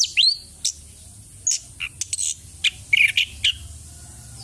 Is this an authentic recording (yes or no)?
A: yes